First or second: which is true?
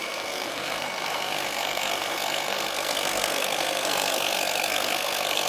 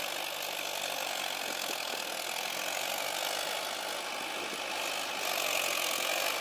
second